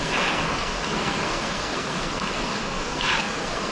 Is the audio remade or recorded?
remade